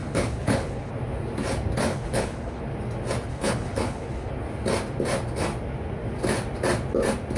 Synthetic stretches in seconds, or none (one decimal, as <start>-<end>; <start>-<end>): 0.0-0.9; 1.9-2.6; 3.3-4.3